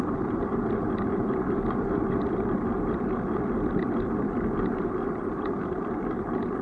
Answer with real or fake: fake